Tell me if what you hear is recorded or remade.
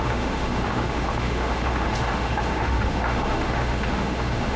remade